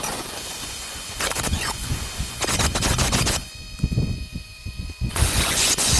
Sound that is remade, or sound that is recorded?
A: remade